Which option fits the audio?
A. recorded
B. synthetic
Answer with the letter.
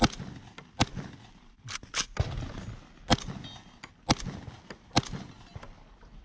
A